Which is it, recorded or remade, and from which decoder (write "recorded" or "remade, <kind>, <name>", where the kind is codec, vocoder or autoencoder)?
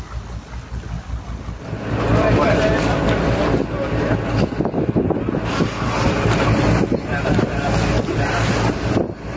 recorded